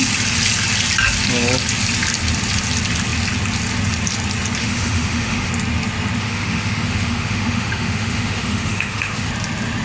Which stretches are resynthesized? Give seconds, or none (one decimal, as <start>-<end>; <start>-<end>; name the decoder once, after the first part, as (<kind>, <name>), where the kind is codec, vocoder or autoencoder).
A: 4.6-5.5 (autoencoder, DAC-VAE); 6.2-9.3